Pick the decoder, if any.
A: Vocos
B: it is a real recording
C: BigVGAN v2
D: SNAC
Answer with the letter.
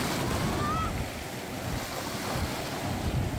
B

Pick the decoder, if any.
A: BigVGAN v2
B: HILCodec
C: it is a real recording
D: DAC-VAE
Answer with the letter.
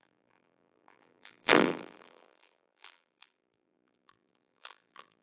A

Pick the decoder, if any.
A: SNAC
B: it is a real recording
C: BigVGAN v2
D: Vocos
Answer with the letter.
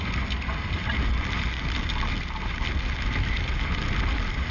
B